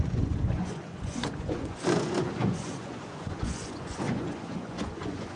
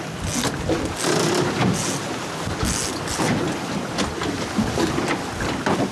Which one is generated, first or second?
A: first